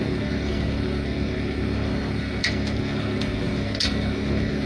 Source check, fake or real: fake